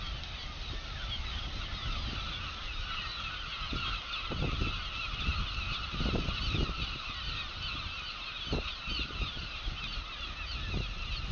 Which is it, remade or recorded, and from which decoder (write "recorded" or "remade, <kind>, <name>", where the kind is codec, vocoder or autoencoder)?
recorded